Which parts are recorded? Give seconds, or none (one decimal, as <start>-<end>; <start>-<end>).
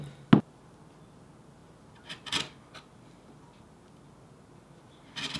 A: 0.0-5.4